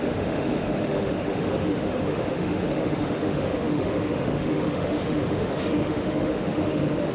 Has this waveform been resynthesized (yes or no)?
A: yes